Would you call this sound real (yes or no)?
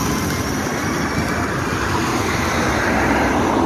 yes